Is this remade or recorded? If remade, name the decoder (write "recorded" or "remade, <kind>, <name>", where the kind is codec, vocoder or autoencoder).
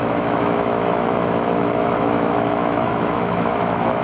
remade, autoencoder, DAC-VAE